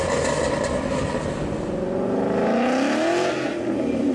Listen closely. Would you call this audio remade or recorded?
recorded